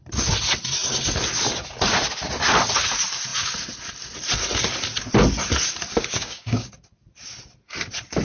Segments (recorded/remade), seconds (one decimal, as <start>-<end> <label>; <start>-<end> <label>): 0.0-6.0 recorded; 6.0-6.7 remade; 6.7-8.2 recorded